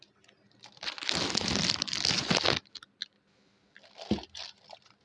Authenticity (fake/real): fake